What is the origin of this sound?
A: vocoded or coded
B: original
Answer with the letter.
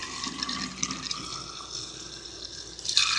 B